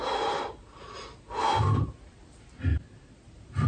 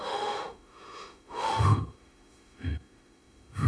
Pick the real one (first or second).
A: first